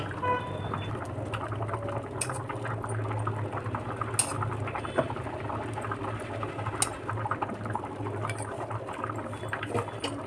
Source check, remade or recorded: recorded